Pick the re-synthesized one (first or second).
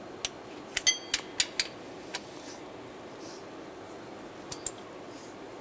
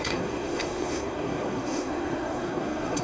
second